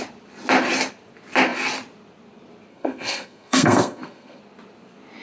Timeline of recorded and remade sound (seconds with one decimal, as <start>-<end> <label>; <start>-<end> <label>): 0.0-2.7 recorded; 2.7-4.4 remade; 4.4-5.2 recorded